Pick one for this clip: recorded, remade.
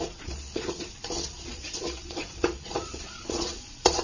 remade